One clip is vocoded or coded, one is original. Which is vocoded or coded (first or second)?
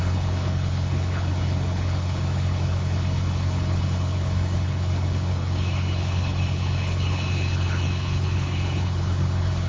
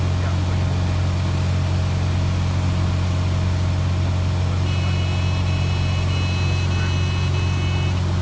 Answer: first